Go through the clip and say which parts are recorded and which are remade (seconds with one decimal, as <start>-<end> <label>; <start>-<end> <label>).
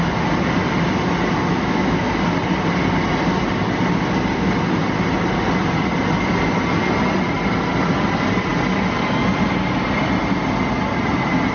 0.0-1.5 recorded; 1.5-2.1 remade; 2.1-11.5 recorded